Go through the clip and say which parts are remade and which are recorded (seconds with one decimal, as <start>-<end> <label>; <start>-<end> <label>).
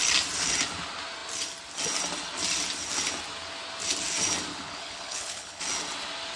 0.0-4.5 recorded; 4.5-5.6 remade; 5.6-6.4 recorded